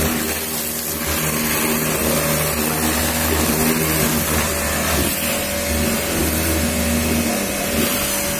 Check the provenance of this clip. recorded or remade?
recorded